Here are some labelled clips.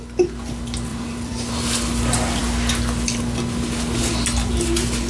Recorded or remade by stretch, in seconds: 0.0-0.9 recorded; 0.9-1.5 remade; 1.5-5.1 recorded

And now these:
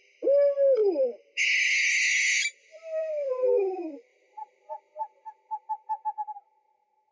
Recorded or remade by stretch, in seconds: 0.0-2.6 recorded; 2.6-3.3 remade; 3.3-7.1 recorded